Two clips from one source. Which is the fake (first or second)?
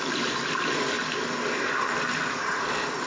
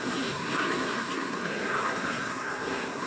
second